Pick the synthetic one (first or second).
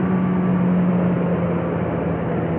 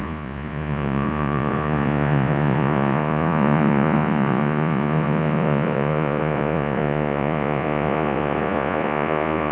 second